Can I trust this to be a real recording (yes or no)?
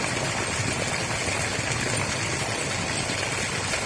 yes